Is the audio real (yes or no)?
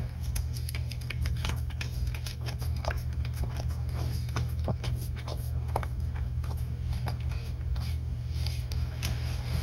no